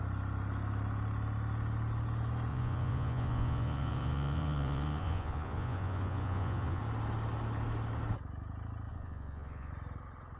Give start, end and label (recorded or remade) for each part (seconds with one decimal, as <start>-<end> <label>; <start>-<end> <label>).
0.0-2.5 recorded; 2.5-6.8 remade; 6.8-8.9 recorded; 8.9-9.7 remade; 9.7-10.4 recorded